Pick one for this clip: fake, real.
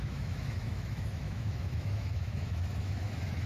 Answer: fake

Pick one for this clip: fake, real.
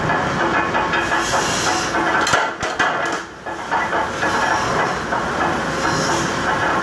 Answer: real